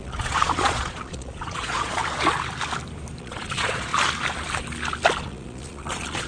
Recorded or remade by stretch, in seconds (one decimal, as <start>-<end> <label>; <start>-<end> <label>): 0.0-2.0 remade; 2.0-3.2 recorded; 3.2-3.9 remade; 3.9-5.2 recorded; 5.2-6.3 remade